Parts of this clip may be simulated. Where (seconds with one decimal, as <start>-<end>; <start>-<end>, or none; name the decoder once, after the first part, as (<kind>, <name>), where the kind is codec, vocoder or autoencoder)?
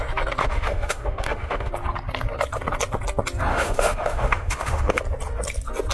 0.4-1.7 (autoencoder, DAC-VAE); 3.5-5.0